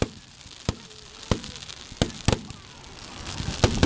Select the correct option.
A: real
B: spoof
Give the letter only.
A